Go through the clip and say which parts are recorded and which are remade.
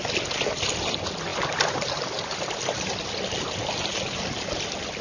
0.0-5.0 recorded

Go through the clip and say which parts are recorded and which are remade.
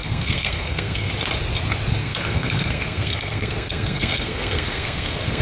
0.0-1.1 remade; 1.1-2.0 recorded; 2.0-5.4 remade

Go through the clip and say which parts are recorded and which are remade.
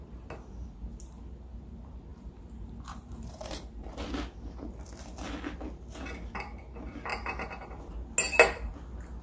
0.0-2.1 recorded; 2.1-4.1 remade; 4.1-7.1 recorded; 7.1-7.8 remade; 7.8-9.2 recorded